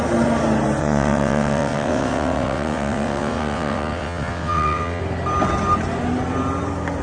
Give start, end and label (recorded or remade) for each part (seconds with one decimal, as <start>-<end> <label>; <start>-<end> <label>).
0.0-0.8 recorded; 0.8-5.0 remade; 5.0-7.0 recorded